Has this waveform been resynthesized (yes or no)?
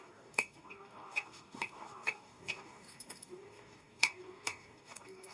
yes